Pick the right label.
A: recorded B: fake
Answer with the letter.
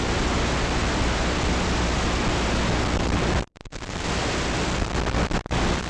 A